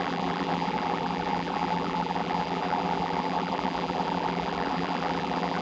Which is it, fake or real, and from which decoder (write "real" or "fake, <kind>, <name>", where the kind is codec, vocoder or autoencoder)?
fake, vocoder, BigVGAN v2